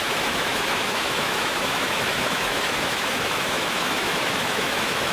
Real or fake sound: fake